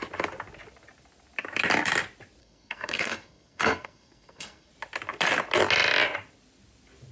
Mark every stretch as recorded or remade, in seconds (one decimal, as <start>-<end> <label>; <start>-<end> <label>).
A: 0.0-2.4 recorded; 2.4-4.7 remade; 4.7-7.1 recorded